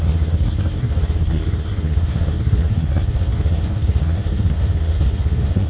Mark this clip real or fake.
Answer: fake